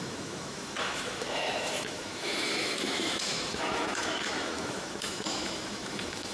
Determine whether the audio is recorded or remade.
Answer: remade